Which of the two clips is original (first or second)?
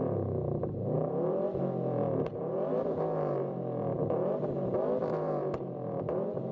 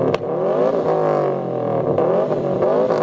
second